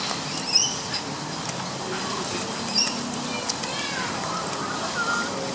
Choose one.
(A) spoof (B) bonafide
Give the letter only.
B